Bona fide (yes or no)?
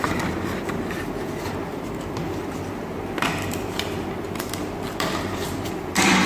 yes